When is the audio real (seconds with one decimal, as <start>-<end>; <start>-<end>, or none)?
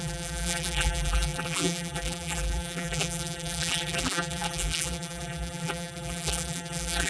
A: none